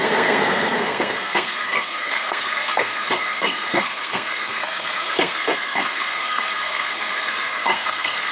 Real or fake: fake